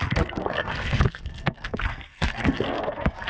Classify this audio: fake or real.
fake